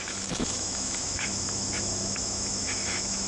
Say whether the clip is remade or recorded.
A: remade